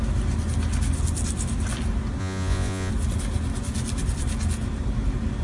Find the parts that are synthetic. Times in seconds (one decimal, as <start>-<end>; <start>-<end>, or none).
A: 2.2-2.9